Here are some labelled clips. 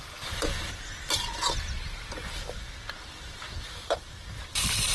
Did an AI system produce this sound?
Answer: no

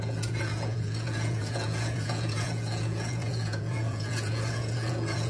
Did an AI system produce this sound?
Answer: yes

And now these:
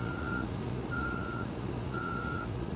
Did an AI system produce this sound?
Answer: yes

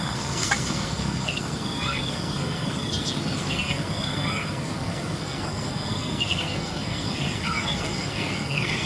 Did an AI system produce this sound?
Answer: yes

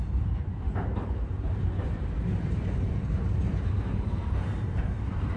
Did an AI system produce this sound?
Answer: yes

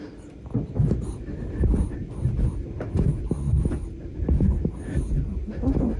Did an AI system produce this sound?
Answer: no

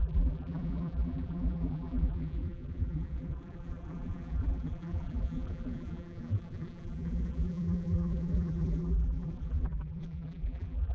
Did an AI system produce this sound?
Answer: yes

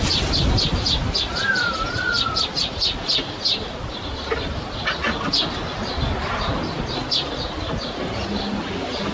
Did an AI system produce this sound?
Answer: no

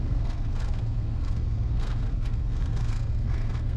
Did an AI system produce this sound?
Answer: yes